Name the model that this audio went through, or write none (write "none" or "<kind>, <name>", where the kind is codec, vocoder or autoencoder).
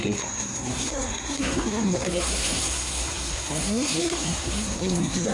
codec, SNAC